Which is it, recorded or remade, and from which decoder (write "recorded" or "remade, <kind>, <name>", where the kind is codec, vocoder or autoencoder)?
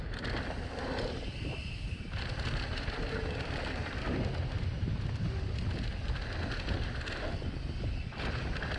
recorded